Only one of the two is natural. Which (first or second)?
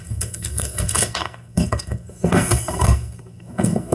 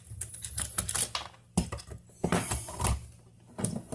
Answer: second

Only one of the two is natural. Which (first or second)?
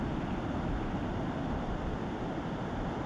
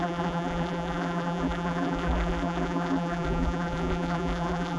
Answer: first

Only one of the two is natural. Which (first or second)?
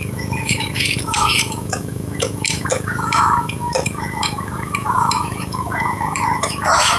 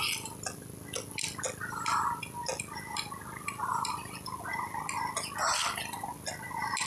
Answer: second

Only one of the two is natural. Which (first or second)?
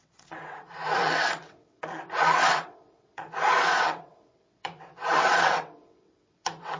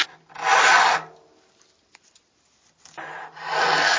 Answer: second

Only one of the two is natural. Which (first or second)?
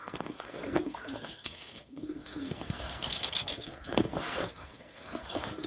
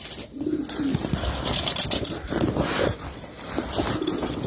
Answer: second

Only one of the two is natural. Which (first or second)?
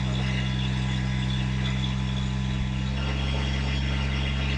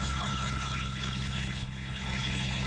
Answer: first